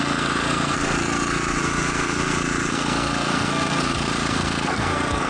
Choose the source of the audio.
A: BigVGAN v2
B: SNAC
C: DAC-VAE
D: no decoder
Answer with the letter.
B